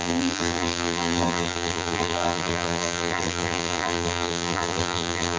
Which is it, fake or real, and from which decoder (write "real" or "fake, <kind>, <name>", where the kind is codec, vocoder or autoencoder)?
fake, vocoder, BigVGAN v2